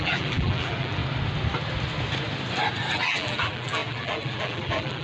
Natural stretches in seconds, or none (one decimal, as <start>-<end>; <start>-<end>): 1.0-2.9